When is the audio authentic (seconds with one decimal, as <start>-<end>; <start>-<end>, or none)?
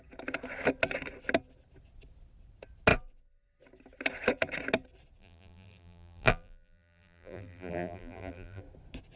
0.0-5.2; 8.6-9.2